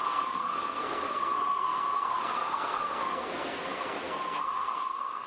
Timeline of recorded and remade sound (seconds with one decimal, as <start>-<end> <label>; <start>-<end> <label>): 0.0-5.3 remade